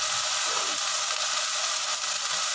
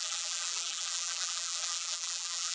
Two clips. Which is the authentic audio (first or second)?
first